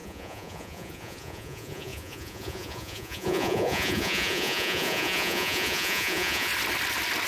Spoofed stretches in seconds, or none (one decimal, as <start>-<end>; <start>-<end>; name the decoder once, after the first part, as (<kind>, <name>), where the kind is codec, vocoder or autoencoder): 0.0-6.5 (vocoder, Vocos)